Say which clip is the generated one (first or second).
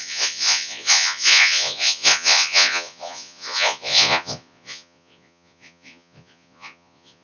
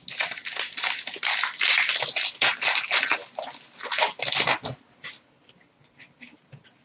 first